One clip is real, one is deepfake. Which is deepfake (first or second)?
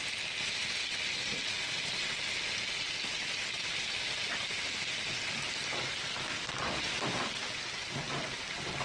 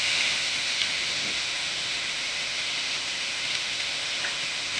second